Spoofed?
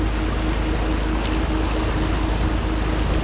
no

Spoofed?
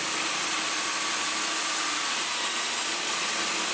no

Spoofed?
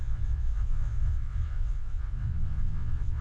yes